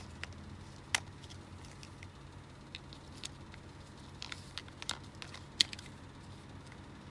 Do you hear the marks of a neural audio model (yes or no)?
no